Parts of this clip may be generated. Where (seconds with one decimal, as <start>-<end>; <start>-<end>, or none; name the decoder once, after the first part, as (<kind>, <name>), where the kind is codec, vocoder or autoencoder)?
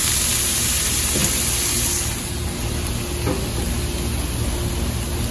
none